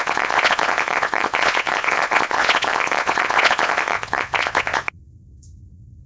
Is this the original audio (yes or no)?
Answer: no